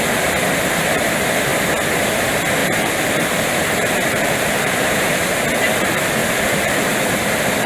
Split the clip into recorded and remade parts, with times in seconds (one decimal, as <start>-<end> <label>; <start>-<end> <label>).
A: 0.0-2.6 recorded; 2.6-5.4 remade; 5.4-6.2 recorded; 6.2-7.1 remade; 7.1-7.7 recorded